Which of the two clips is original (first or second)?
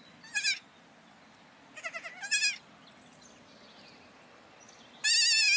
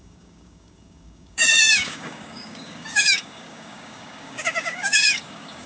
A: first